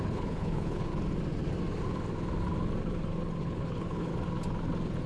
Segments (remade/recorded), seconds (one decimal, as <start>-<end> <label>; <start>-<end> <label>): 0.0-0.9 remade; 0.9-3.4 recorded; 3.4-4.1 remade; 4.1-5.1 recorded